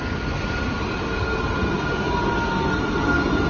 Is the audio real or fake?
real